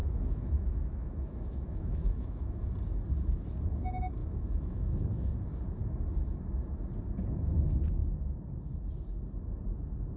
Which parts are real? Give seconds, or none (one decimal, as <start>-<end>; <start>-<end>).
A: 2.7-4.2; 5.3-10.2